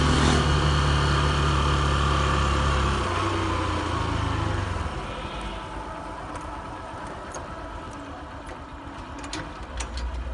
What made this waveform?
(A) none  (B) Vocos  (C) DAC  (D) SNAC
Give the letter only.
A